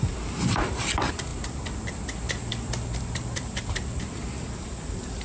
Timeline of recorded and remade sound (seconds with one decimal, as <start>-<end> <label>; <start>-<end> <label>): 0.0-1.3 recorded; 1.3-4.0 remade; 4.0-5.2 recorded